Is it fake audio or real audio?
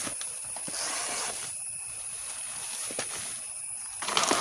real